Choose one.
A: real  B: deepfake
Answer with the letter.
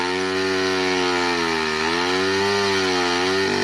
A